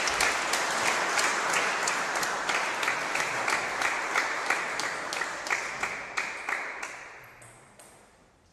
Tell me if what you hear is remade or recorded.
recorded